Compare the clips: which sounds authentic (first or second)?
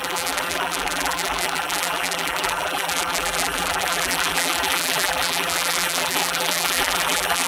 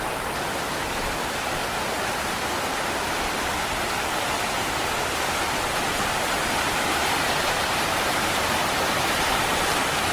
second